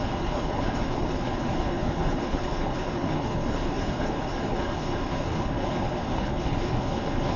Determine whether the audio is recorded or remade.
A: remade